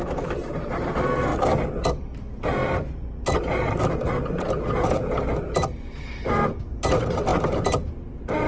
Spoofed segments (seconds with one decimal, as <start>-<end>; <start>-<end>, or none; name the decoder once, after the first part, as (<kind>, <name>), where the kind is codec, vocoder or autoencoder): none